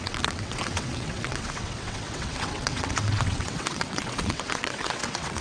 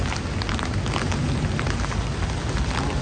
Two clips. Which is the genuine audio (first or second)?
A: second